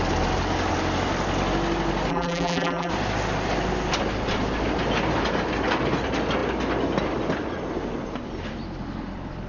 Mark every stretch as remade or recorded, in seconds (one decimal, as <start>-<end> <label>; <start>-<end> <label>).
0.0-2.1 recorded; 2.1-2.9 remade; 2.9-9.5 recorded